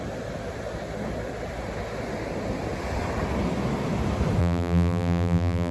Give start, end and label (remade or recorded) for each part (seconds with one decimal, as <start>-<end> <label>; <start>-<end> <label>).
0.0-4.4 recorded; 4.4-5.7 remade